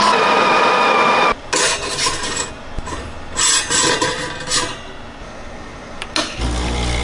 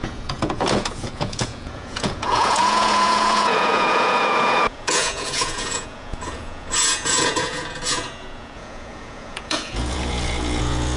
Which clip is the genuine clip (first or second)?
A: first